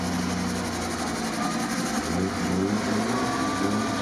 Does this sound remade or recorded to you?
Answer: recorded